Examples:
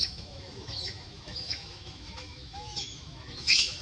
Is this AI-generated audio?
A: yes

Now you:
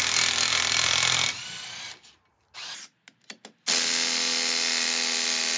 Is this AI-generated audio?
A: no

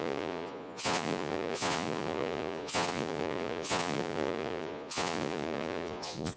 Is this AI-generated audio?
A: yes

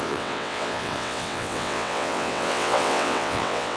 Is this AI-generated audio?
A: yes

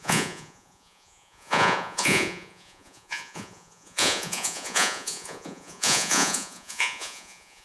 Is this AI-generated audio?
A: yes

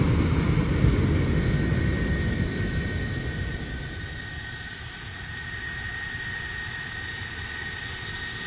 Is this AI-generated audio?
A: no